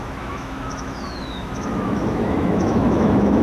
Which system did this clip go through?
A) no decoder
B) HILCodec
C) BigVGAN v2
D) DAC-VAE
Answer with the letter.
D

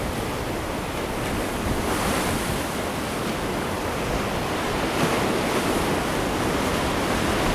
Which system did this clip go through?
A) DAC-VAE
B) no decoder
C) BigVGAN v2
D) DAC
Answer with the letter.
B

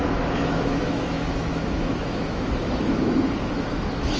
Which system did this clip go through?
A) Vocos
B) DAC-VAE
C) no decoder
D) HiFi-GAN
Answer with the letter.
B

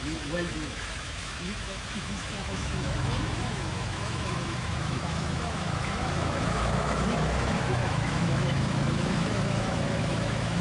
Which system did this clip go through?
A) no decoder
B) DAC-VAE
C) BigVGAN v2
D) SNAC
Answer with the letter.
B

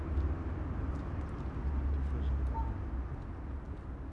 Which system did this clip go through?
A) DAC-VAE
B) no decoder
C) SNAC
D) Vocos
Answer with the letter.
B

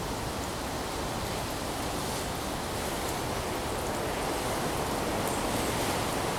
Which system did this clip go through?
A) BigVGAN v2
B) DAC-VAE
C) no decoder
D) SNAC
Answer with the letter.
C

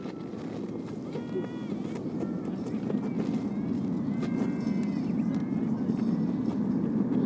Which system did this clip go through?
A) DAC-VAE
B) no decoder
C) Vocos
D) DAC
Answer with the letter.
B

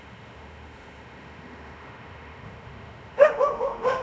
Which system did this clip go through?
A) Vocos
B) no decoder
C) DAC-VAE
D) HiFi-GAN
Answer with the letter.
C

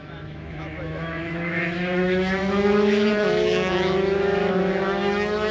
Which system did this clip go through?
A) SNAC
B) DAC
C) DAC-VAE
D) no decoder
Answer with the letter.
C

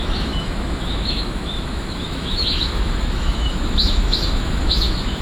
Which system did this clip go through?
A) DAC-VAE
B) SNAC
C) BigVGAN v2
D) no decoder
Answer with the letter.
A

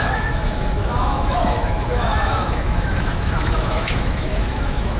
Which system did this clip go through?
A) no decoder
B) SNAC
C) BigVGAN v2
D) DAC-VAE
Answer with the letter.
D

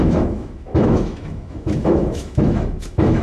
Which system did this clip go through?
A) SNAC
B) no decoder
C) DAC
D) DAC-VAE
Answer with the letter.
D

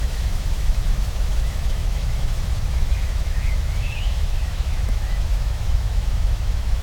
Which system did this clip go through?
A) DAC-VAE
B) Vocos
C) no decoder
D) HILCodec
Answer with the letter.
A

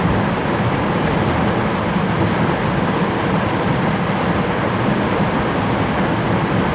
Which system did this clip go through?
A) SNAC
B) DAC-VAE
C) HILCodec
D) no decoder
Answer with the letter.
D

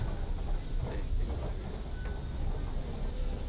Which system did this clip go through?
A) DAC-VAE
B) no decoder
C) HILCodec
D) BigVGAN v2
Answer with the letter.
B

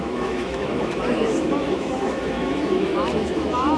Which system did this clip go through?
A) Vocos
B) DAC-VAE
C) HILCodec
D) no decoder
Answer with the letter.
B